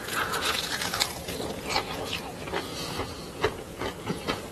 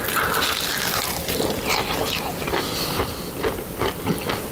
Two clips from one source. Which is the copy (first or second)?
first